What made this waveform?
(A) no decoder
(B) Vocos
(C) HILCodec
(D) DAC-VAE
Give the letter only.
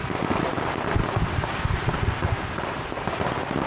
A